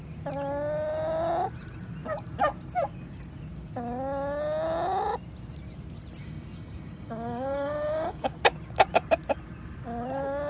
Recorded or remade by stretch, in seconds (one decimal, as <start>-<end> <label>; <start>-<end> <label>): 0.0-6.2 recorded; 6.2-8.3 remade; 8.3-10.5 recorded